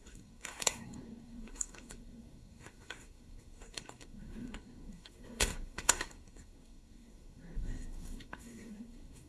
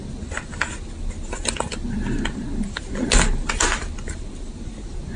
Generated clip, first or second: first